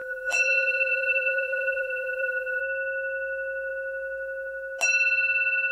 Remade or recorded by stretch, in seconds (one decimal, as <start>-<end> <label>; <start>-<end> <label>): 0.0-2.6 remade; 2.6-5.7 recorded